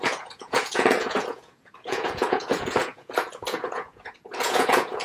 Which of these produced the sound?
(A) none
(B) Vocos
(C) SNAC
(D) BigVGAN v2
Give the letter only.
B